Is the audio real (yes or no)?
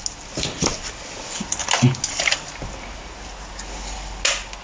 yes